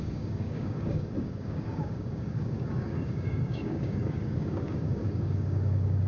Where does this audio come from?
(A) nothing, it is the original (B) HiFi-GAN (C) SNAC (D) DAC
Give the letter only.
D